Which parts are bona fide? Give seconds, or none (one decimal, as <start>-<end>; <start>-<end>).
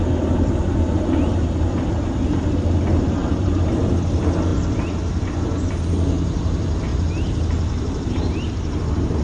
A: 0.0-3.2; 3.7-6.9